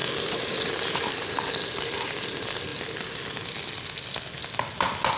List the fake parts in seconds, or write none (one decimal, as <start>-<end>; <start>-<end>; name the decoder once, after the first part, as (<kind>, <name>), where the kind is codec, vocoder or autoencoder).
none